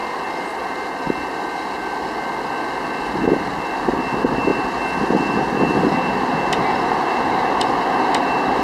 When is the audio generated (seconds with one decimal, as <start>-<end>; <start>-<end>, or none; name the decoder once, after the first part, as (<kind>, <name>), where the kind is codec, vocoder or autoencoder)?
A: none